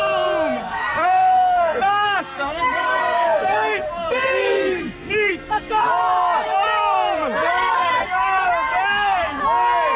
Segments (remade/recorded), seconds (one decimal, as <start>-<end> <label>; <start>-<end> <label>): 0.0-0.6 recorded; 0.6-5.9 remade; 5.9-7.5 recorded; 7.5-8.5 remade; 8.5-8.9 recorded; 8.9-9.4 remade; 9.4-10.0 recorded